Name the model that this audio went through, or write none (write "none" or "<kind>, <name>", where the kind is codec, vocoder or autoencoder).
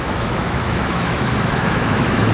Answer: autoencoder, DAC-VAE